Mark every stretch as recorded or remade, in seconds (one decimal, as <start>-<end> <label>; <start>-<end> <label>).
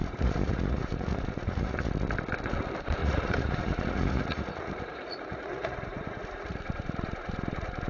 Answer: 0.0-1.9 remade; 1.9-3.0 recorded; 3.0-7.9 remade